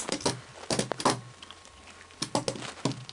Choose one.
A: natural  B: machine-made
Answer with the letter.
A